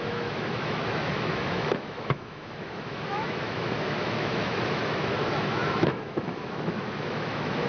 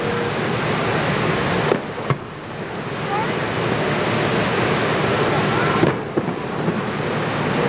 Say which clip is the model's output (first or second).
first